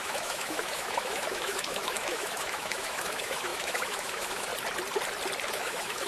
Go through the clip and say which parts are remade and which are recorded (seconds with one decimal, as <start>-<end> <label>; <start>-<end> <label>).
0.0-4.5 remade; 4.5-5.5 recorded; 5.5-6.1 remade